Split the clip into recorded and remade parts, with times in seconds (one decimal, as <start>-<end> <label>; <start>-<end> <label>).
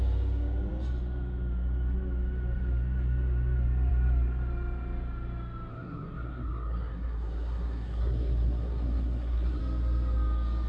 0.0-5.7 recorded; 5.7-9.6 remade; 9.6-10.7 recorded